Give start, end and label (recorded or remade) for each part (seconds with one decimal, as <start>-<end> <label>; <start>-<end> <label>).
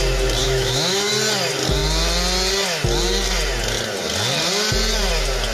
0.0-0.4 recorded; 0.4-1.1 remade; 1.1-5.5 recorded